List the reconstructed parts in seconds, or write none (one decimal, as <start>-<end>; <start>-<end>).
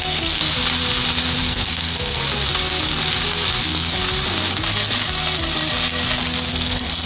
0.0-0.4; 1.4-2.2; 3.6-4.0; 6.5-7.1